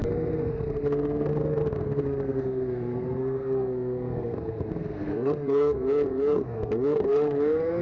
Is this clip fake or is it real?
fake